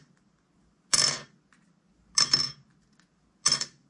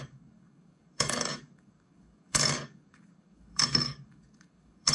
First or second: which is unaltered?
first